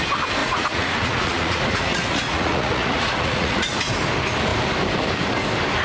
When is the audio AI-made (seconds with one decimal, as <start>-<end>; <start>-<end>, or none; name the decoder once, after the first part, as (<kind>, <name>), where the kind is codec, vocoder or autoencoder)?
0.4-3.9 (vocoder, Vocos)